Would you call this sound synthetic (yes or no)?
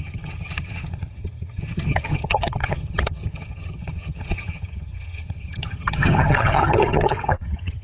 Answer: yes